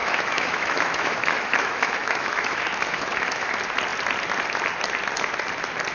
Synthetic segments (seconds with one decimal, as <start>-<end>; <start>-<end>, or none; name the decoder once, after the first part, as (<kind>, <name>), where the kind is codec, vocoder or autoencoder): 0.0-3.5 (autoencoder, DAC-VAE)